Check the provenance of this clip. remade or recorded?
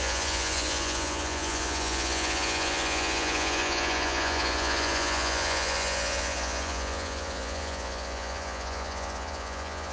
remade